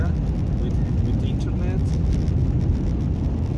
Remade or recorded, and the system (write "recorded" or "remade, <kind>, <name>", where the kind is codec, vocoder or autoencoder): recorded